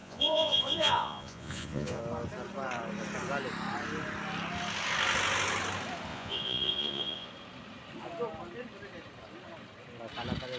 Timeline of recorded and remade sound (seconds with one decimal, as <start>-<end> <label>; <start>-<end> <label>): 0.0-2.0 remade; 2.0-6.1 recorded; 6.1-7.3 remade; 7.3-10.6 recorded